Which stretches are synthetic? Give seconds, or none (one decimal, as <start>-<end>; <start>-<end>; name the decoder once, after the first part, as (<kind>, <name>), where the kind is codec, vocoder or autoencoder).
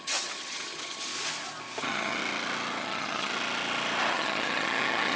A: 0.0-1.1 (vocoder, HiFi-GAN); 1.8-2.2; 2.8-3.3; 4.1-5.2